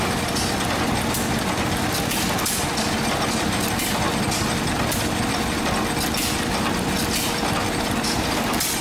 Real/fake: real